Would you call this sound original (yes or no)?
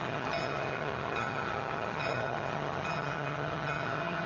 no